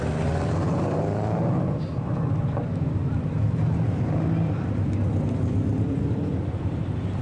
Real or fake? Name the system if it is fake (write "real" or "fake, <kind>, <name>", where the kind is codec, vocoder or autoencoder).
real